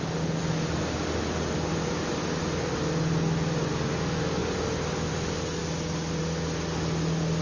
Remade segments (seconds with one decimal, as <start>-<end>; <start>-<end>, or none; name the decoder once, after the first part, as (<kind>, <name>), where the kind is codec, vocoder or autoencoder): none